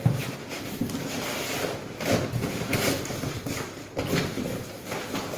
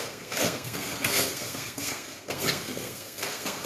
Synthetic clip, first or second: second